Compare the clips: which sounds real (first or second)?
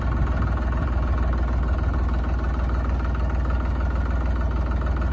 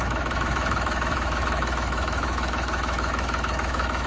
first